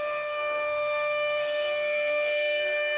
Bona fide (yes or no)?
no